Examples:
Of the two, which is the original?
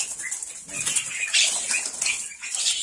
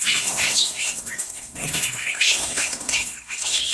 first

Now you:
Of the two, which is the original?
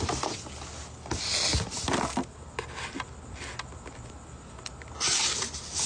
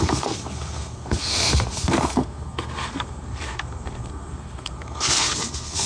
first